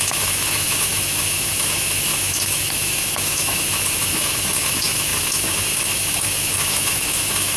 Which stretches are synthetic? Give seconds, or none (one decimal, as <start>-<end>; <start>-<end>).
0.0-7.6